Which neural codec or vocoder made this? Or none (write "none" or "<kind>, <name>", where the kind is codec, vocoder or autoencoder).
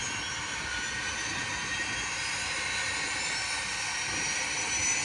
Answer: none